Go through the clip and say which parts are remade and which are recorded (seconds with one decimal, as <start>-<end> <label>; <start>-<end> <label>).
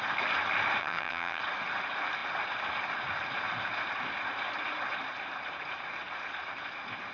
0.0-0.8 recorded; 0.8-1.4 remade; 1.4-7.1 recorded